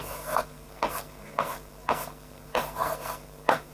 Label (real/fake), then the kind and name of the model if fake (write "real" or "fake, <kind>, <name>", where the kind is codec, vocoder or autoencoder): fake, codec, SNAC